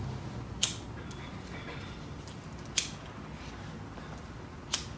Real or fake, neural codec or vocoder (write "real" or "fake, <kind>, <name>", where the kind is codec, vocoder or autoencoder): real